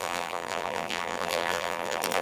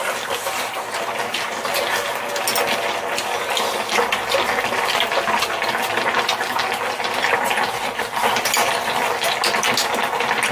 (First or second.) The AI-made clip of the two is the first